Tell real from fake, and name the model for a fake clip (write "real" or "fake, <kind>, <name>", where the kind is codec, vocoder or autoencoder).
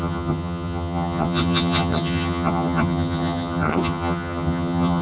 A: fake, vocoder, HiFi-GAN